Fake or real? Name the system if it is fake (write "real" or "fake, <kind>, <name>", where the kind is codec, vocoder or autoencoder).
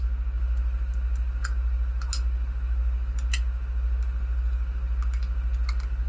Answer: real